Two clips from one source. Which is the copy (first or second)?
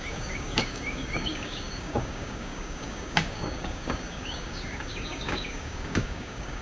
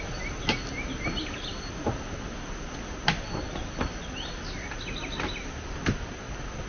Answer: first